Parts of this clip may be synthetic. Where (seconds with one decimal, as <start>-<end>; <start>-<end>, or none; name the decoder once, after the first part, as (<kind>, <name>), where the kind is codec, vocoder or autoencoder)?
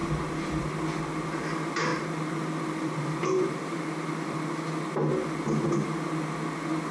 0.0-0.7 (vocoder, BigVGAN v2); 1.9-4.4